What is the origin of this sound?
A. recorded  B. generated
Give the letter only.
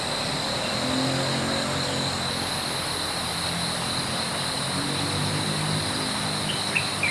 A